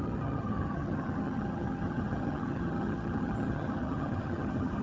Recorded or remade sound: remade